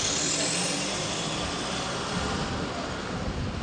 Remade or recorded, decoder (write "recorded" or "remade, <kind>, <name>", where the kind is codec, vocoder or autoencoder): recorded